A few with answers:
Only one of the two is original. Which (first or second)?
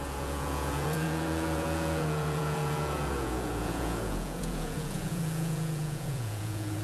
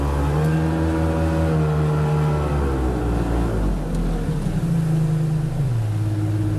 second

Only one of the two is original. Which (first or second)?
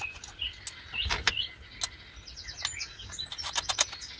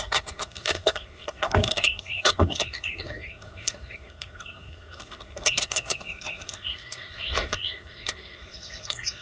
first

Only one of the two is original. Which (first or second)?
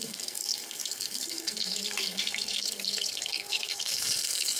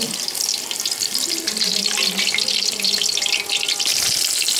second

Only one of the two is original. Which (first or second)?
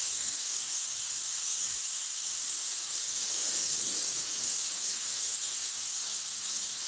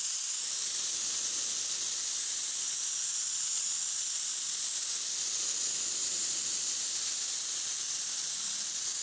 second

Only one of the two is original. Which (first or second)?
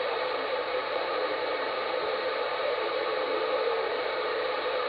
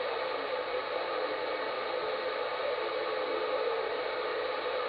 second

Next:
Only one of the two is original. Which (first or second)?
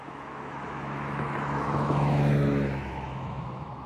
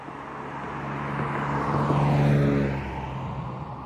second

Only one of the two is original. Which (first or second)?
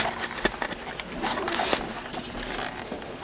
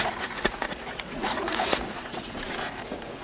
first